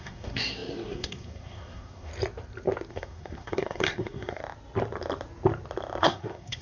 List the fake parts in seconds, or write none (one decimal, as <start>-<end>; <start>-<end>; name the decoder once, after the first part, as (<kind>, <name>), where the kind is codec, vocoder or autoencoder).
0.0-2.1 (codec, SNAC); 2.9-4.4; 6.0-6.6